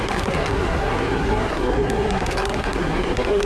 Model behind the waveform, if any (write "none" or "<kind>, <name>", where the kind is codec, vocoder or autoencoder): codec, SNAC